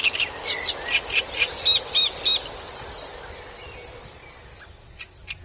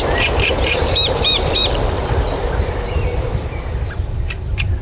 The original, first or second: first